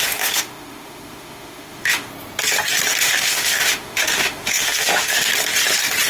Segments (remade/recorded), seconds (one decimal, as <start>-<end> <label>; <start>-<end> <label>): 0.0-2.1 remade; 2.1-3.0 recorded; 3.0-5.3 remade; 5.3-6.1 recorded